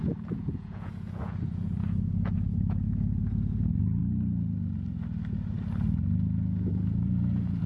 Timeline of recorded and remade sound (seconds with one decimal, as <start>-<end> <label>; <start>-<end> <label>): 0.0-4.0 remade; 4.0-6.4 recorded; 6.4-7.7 remade